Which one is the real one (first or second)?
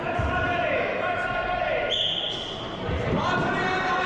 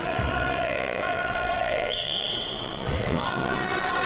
first